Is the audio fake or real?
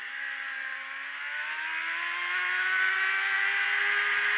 real